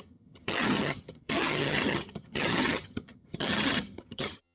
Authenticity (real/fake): fake